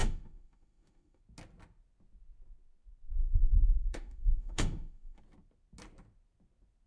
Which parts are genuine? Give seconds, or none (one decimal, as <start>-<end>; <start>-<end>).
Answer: 1.2-3.2; 5.2-6.9